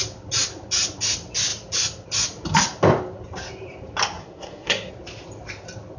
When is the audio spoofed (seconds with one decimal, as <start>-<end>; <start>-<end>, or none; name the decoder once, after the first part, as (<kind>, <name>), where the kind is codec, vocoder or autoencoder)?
4.2-4.9 (codec, SNAC)